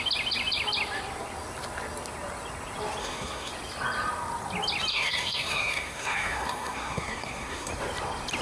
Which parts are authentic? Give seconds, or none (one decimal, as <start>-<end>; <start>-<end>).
0.0-3.0; 3.5-4.9; 7.7-8.4